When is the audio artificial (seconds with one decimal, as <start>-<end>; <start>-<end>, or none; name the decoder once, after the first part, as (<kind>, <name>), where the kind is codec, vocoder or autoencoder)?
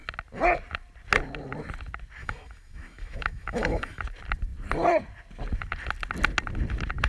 2.2-4.0 (autoencoder, DAC-VAE)